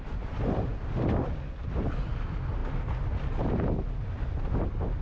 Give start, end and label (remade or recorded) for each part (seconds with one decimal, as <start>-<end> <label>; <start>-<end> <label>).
0.0-5.0 recorded